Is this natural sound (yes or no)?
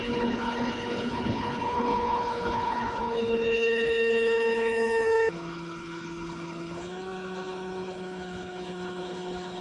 no